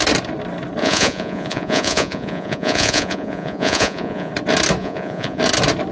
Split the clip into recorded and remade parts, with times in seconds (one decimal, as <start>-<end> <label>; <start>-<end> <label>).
0.0-0.8 recorded; 0.8-4.3 remade; 4.3-4.8 recorded; 4.8-5.4 remade; 5.4-5.9 recorded